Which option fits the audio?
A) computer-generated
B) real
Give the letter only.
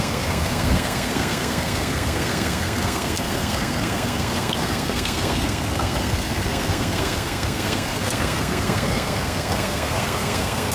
A